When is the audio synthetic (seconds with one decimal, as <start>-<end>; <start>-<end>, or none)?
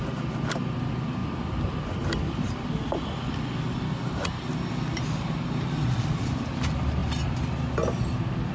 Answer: none